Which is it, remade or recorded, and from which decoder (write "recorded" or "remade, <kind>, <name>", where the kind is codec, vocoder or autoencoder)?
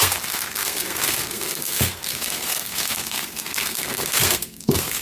remade, codec, SNAC